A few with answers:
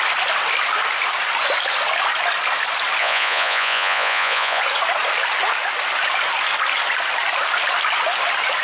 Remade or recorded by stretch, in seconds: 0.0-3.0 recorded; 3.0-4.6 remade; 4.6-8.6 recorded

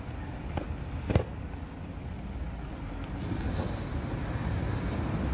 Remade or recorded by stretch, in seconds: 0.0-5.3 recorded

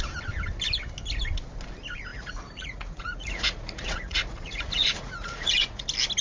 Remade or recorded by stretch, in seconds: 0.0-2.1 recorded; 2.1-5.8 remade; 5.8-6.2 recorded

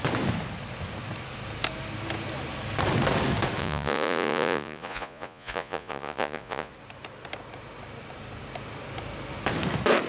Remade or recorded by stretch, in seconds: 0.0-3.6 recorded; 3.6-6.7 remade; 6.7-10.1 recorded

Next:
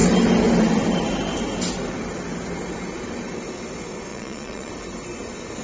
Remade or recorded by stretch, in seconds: 0.0-4.1 recorded; 4.1-4.7 remade; 4.7-5.6 recorded